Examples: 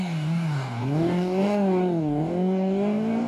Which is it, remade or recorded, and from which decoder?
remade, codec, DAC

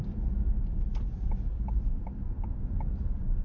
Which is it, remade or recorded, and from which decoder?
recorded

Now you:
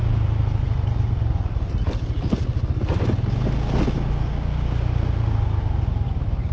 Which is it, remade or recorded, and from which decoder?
recorded